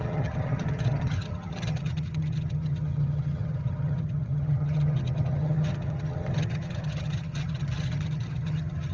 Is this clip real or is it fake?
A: fake